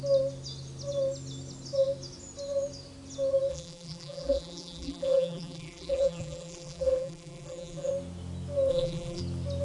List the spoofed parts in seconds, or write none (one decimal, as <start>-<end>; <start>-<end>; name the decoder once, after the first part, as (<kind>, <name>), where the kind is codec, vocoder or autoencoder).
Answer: 3.5-7.9 (vocoder, BigVGAN v2); 8.7-9.2